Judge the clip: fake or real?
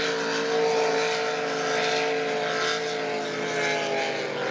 real